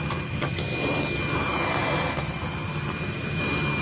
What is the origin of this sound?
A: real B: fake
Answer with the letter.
A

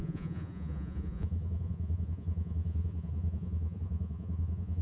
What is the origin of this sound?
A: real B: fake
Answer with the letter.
B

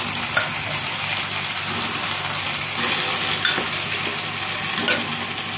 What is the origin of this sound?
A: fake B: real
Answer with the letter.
B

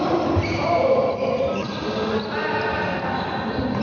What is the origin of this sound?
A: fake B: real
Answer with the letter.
B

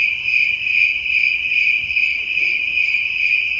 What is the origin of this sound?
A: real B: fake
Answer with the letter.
B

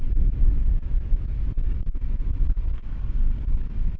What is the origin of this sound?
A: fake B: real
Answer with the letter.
B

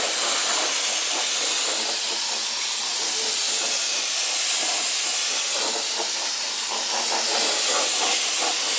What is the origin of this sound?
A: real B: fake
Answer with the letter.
A